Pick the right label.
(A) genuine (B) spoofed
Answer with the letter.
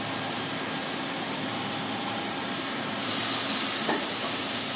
B